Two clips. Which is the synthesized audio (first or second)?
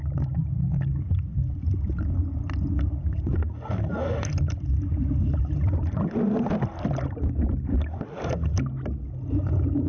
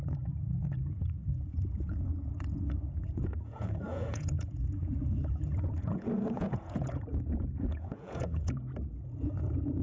second